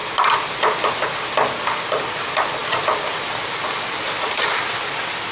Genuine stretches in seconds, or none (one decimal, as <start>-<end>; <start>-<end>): 0.0-5.3